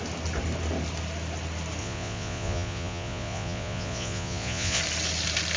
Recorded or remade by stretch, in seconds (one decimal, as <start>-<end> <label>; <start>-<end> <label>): 0.0-1.8 recorded; 1.8-4.8 remade; 4.8-5.6 recorded

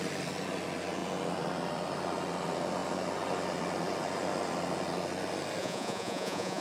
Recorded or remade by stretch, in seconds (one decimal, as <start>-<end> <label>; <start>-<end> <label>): 0.0-5.6 recorded; 5.6-6.6 remade

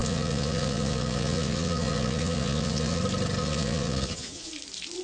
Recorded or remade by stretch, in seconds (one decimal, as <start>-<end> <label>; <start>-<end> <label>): 0.0-3.0 remade; 3.0-3.4 recorded; 3.4-4.5 remade; 4.5-5.0 recorded